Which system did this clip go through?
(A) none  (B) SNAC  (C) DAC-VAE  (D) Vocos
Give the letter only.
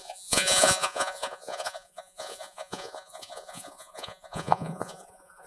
D